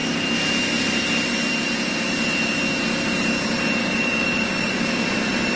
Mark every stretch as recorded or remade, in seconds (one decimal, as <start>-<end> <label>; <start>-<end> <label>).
0.0-3.8 recorded; 3.8-4.9 remade; 4.9-5.6 recorded